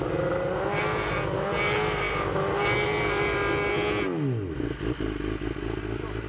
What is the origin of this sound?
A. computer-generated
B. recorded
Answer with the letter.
B